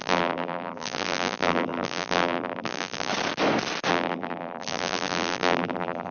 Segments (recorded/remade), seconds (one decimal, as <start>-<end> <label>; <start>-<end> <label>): 0.0-3.1 remade; 3.1-3.9 recorded; 3.9-6.1 remade